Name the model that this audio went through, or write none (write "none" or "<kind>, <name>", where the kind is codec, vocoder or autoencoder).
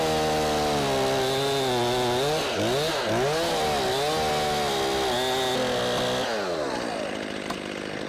none